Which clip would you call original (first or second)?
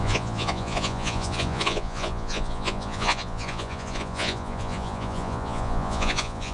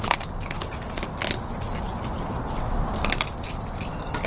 second